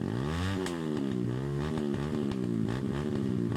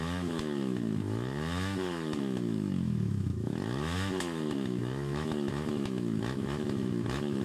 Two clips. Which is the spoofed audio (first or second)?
second